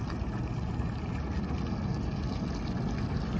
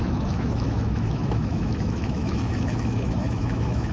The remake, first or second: second